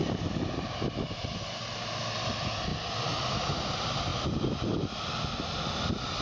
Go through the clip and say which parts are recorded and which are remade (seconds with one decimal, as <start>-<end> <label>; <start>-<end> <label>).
0.0-2.7 remade; 2.7-3.3 recorded; 3.3-6.2 remade